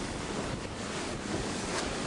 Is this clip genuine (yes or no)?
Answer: no